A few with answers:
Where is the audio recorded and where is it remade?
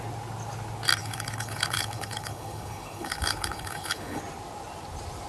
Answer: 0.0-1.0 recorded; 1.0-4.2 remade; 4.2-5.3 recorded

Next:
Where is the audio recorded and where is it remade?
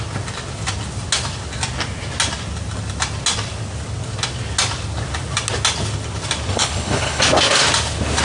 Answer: 0.0-6.5 recorded; 6.5-7.2 remade; 7.2-8.2 recorded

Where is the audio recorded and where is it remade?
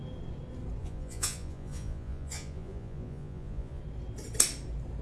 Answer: 0.0-0.8 recorded; 0.8-3.8 remade; 3.8-5.0 recorded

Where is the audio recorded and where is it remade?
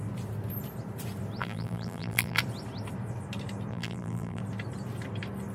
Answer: 0.0-1.4 recorded; 1.4-2.4 remade; 2.4-3.7 recorded; 3.7-4.4 remade; 4.4-5.5 recorded